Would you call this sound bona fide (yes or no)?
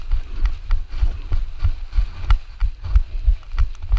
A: yes